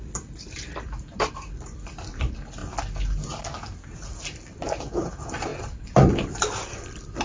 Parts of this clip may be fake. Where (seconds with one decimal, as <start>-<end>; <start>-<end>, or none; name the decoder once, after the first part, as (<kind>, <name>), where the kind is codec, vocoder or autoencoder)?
0.0-2.6 (vocoder, BigVGAN v2); 5.1-5.5; 6.0-7.2